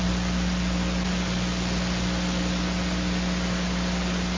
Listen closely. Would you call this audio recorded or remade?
recorded